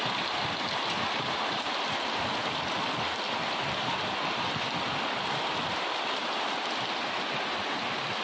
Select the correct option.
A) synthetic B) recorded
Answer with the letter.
B